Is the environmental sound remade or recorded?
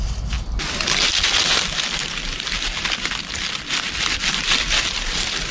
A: recorded